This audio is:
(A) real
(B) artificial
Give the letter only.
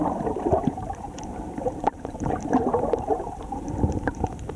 B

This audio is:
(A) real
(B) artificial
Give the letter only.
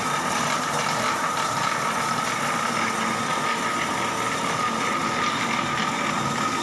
A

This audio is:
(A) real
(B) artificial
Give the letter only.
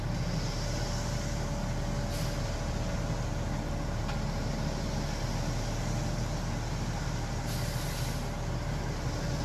A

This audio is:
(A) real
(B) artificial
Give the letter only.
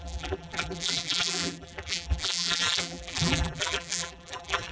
B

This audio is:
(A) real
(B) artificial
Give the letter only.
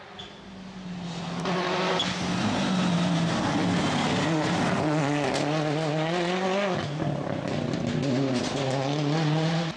A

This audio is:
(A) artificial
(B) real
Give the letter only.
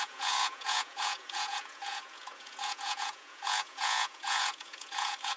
A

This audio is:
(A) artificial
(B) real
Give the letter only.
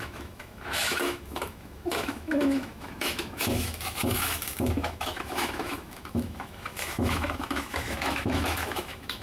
A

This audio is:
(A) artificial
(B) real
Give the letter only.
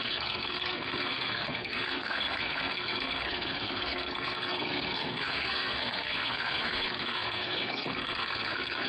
A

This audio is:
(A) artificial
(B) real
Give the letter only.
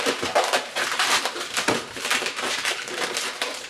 A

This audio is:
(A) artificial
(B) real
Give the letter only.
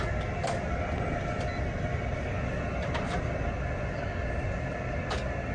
B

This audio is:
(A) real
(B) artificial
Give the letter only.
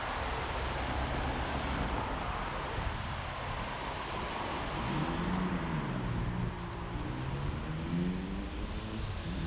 A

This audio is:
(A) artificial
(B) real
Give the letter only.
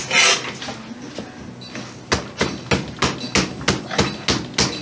B